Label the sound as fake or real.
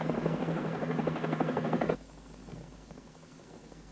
fake